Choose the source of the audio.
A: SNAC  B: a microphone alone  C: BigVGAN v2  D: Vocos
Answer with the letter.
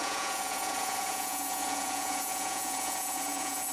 D